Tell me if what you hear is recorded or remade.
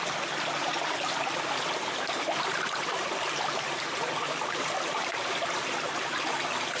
recorded